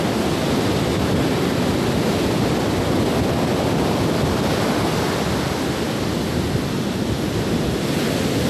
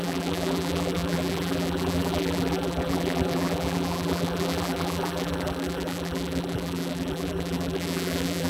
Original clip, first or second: first